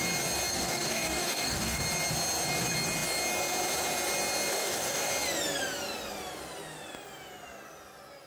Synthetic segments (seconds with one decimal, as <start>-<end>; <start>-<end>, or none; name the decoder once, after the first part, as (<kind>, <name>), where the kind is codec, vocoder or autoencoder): 0.5-1.8 (codec, DAC); 4.5-5.1